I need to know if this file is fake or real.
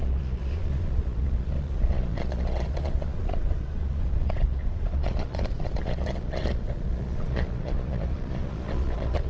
fake